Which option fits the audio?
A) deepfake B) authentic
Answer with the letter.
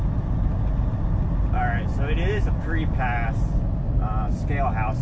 B